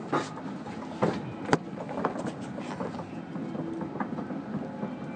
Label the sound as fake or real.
real